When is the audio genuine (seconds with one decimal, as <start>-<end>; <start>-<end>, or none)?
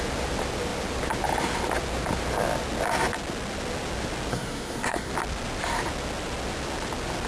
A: 0.0-4.3; 5.1-7.3